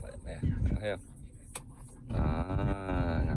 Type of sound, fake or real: real